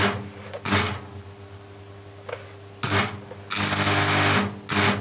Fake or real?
real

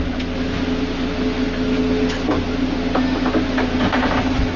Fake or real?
real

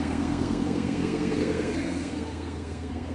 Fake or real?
fake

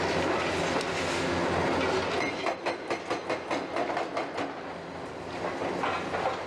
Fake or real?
real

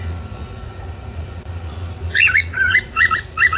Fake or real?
fake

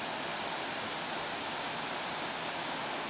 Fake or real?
real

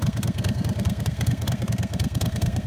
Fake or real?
fake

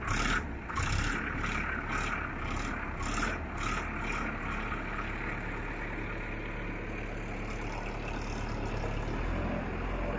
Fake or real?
real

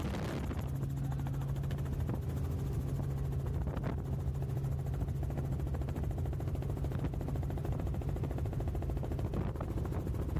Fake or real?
real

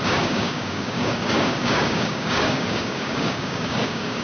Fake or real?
fake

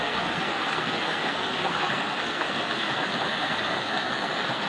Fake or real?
fake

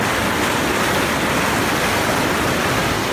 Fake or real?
real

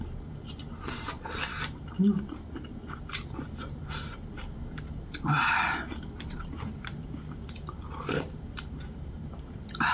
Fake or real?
fake